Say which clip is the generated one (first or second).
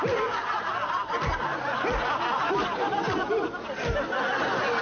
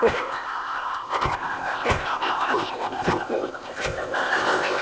second